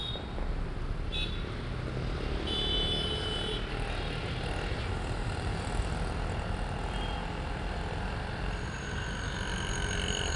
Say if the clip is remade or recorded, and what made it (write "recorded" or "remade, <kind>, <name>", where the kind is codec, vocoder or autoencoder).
recorded